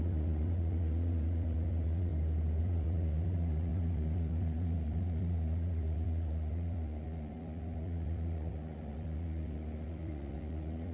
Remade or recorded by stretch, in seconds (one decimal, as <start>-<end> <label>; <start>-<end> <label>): 0.0-2.1 remade; 2.1-2.6 recorded; 2.6-10.9 remade